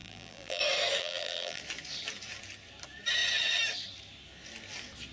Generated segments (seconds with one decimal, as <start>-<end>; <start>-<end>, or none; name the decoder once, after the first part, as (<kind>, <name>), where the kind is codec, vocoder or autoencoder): 0.0-0.6 (vocoder, BigVGAN v2); 1.0-1.6